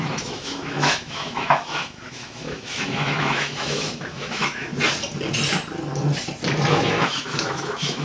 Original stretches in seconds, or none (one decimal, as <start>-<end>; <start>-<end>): 4.7-6.7

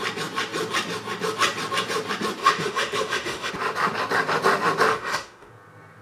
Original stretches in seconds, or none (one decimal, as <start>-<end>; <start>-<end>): 0.0-2.4; 3.5-4.9; 5.5-6.0

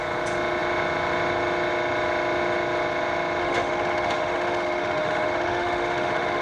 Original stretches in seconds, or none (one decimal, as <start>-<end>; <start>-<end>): 0.0-3.4

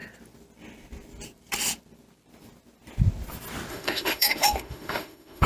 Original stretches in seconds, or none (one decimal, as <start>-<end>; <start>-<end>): 0.0-3.7